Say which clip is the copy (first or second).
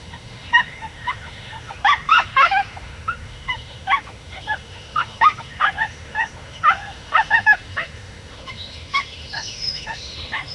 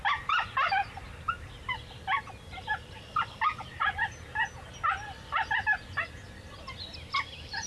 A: first